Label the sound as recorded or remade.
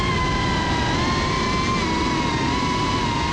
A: recorded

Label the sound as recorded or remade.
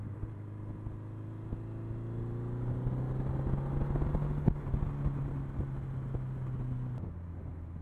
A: recorded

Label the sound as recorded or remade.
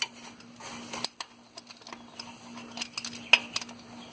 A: recorded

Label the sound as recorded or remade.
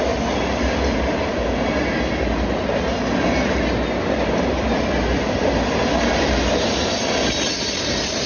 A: recorded